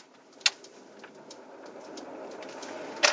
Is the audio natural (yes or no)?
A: yes